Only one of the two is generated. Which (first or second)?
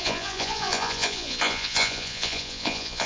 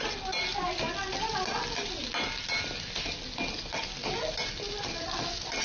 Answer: first